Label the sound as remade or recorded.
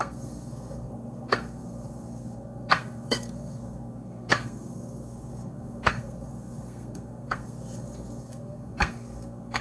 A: remade